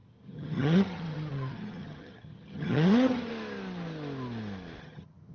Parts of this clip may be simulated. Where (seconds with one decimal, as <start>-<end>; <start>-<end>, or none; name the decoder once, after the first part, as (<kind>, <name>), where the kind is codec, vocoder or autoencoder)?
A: 0.0-3.3 (vocoder, HiFi-GAN); 4.8-5.3